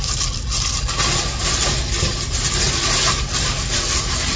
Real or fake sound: real